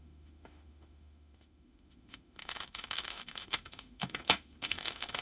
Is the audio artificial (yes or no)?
yes